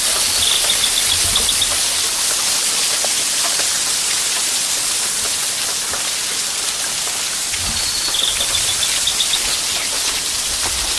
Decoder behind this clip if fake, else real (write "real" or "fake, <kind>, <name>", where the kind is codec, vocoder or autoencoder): real